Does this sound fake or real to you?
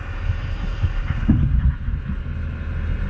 real